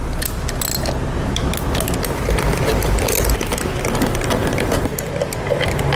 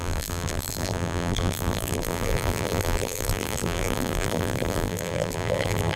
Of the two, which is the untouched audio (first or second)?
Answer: first